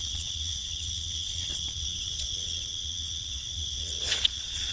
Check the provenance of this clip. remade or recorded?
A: remade